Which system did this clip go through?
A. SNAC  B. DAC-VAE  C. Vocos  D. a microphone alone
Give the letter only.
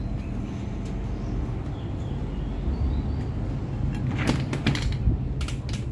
D